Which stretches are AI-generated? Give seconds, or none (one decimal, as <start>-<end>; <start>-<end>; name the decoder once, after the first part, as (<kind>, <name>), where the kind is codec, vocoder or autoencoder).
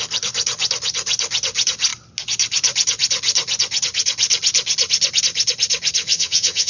6.0-6.7 (vocoder, HiFi-GAN)